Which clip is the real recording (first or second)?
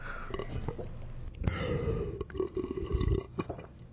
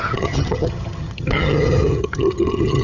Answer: first